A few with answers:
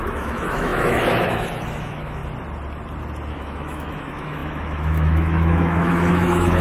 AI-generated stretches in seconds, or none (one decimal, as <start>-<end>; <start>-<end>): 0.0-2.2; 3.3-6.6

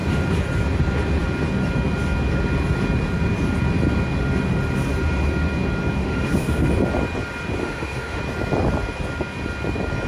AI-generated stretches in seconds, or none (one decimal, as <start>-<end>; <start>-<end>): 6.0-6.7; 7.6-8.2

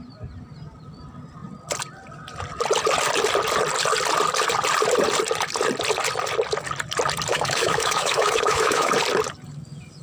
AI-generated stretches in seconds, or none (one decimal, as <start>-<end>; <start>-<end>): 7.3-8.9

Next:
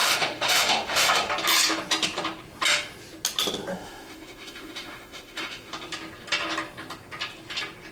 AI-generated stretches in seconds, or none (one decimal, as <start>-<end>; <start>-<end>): 0.0-1.3; 3.7-5.7

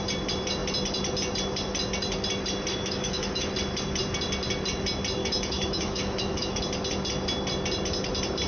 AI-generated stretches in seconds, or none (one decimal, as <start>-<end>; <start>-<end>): 2.7-3.5; 5.2-6.6